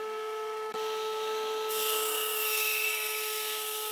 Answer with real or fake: fake